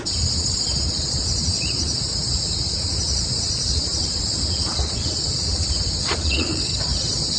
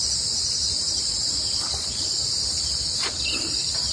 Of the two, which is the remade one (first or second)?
first